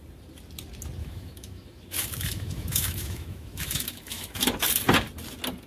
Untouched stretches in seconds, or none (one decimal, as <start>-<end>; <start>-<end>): 0.0-1.0; 4.4-5.7